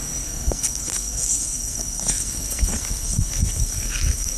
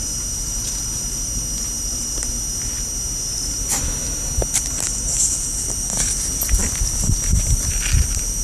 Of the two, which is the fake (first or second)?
first